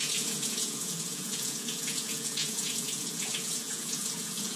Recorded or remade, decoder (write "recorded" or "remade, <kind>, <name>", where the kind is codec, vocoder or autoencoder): remade, vocoder, Vocos